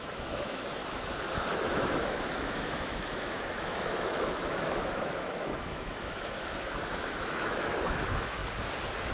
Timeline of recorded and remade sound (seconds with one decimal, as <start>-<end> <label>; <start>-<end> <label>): 0.0-0.8 remade; 0.8-1.6 recorded; 1.6-8.4 remade; 8.4-9.1 recorded